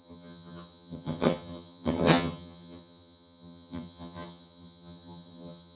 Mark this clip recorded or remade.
remade